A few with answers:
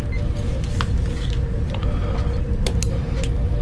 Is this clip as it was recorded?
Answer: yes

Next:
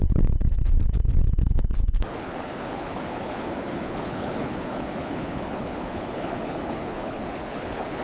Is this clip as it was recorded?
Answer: no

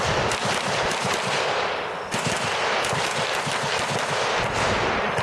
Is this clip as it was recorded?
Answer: yes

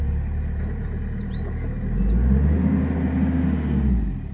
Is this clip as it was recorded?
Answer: yes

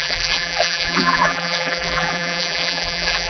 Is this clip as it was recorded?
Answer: no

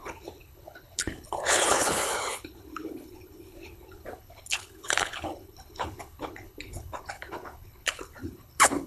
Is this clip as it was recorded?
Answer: no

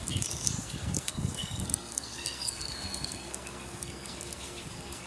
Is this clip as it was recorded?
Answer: no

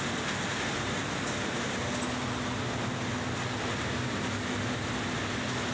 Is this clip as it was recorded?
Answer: yes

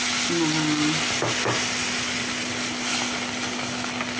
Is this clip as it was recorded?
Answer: yes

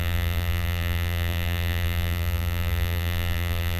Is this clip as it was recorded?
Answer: no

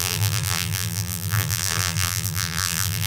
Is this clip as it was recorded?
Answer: no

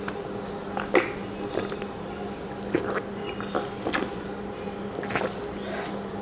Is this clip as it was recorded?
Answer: yes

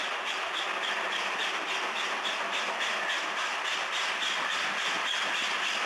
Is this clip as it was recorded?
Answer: yes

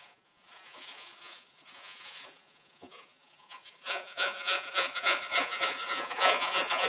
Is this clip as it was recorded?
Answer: no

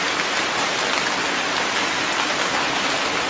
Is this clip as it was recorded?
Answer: yes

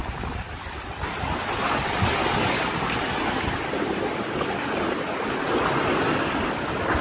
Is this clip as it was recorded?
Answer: yes